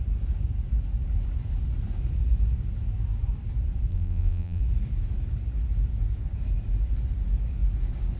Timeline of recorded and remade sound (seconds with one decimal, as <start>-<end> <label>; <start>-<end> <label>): 0.0-3.9 recorded; 3.9-4.6 remade; 4.6-8.2 recorded